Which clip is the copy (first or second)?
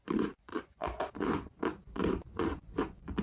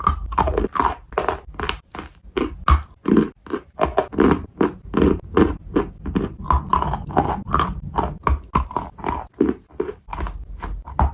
first